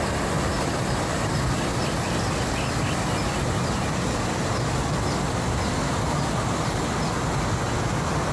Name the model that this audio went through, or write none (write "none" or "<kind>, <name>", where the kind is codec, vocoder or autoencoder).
none